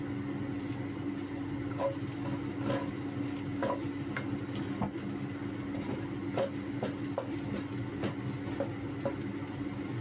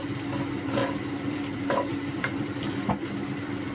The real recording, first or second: first